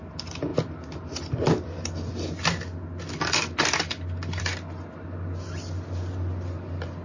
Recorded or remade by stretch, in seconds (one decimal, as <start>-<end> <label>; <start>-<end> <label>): 0.0-7.0 recorded